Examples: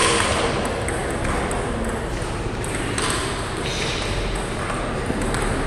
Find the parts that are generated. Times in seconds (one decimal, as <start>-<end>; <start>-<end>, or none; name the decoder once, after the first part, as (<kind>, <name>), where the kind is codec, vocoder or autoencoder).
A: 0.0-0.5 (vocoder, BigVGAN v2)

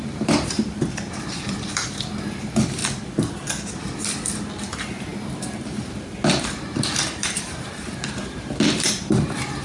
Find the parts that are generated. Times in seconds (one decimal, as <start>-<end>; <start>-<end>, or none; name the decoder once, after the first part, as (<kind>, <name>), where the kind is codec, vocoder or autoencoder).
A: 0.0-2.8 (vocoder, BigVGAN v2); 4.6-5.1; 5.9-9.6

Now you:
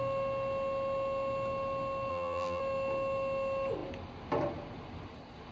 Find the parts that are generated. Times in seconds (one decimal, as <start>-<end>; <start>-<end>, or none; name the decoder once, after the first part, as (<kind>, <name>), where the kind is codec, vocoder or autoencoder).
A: 2.1-2.6 (vocoder, BigVGAN v2)

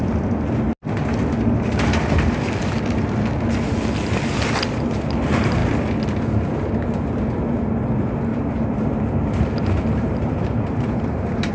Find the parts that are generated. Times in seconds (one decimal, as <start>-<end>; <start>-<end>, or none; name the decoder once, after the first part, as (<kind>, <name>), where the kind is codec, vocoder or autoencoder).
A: 8.3-11.5 (vocoder, BigVGAN v2)